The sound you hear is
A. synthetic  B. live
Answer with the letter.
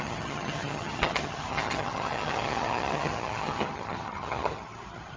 A